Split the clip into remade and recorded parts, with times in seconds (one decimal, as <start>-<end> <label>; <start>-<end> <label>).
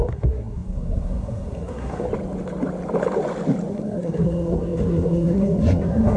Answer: 0.0-2.1 remade; 2.1-3.7 recorded; 3.7-6.2 remade